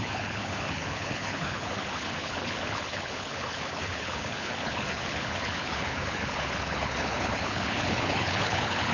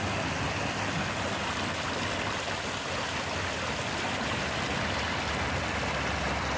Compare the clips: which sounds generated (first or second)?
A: first